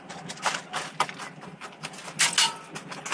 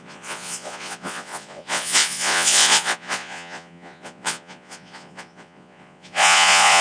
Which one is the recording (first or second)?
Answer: first